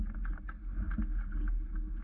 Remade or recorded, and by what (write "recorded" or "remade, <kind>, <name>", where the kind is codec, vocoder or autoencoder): recorded